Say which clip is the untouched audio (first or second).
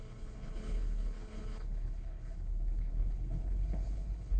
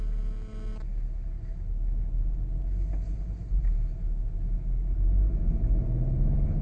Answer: second